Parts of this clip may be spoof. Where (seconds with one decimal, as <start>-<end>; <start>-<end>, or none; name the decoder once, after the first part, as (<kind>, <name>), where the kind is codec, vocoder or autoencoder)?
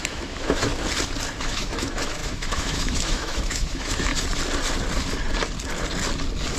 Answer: 0.0-0.7 (autoencoder, DAC-VAE); 1.4-4.1